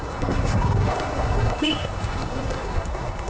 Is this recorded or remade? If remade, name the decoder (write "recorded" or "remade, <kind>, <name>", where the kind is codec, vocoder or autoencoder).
remade, codec, SNAC